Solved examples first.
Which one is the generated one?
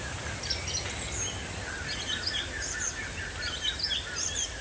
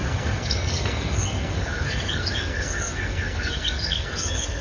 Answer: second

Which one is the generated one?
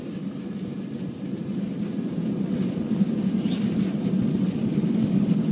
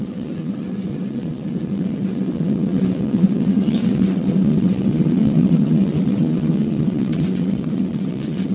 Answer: second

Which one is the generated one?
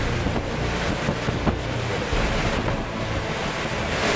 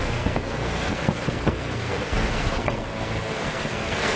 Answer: second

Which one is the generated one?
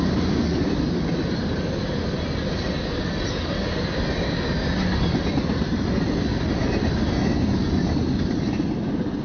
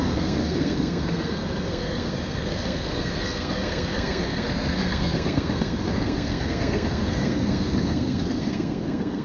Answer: second